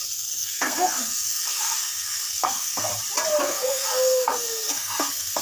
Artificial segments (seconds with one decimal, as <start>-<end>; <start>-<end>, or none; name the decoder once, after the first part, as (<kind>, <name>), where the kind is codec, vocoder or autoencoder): 0.0-2.9 (codec, SNAC); 3.4-5.4